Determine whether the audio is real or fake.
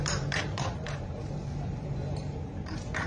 fake